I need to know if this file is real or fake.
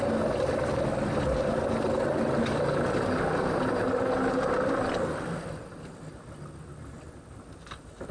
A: real